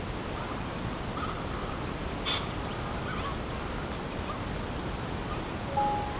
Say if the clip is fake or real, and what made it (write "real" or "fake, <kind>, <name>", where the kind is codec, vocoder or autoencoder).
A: real